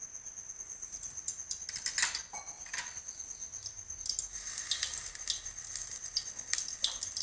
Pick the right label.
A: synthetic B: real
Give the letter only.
B